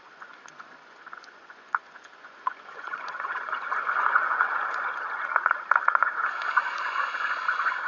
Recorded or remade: remade